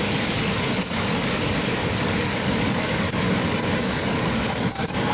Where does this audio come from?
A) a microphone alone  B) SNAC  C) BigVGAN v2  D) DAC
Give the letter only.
D